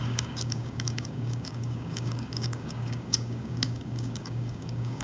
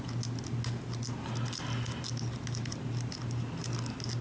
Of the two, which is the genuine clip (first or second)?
second